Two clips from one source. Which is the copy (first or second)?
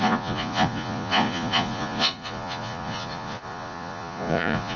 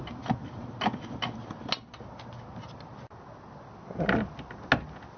first